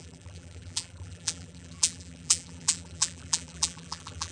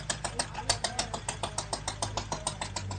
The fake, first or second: first